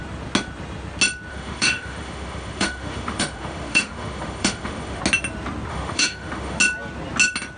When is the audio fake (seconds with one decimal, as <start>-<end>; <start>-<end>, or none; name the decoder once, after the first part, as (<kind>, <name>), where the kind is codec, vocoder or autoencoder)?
1.3-5.0 (autoencoder, DAC-VAE); 5.7-6.6